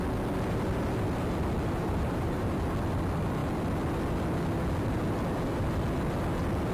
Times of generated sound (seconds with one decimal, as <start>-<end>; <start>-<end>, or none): 1.8-2.4